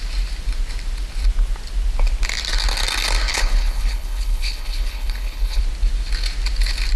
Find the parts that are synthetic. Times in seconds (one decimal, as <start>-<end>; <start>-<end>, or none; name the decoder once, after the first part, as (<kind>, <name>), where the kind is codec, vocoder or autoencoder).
3.3-5.6 (codec, HILCodec)